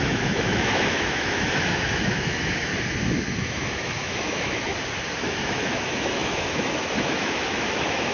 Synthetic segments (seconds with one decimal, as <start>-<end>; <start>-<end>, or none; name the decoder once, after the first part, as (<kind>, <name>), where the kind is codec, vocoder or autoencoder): 0.0-2.7 (autoencoder, DAC-VAE); 3.3-4.7; 5.2-8.1